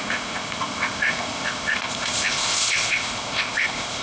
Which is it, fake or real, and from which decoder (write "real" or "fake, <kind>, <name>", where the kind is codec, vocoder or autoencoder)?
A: fake, codec, ZipCodec